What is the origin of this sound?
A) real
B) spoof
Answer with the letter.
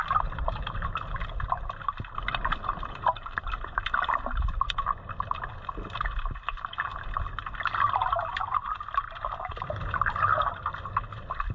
A